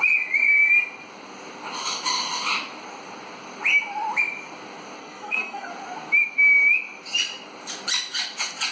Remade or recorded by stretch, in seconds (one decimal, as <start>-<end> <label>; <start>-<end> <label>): 0.0-5.0 recorded; 5.0-5.7 remade; 5.7-8.7 recorded